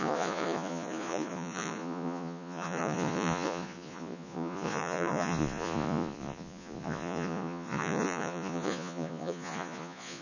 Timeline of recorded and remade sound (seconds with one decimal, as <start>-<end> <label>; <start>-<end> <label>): 0.0-10.2 remade